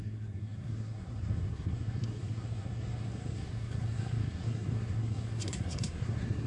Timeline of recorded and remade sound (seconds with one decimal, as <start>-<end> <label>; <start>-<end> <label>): 0.0-6.5 remade